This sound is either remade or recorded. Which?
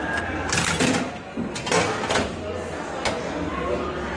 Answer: recorded